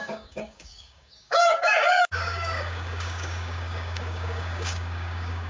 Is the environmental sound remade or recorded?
remade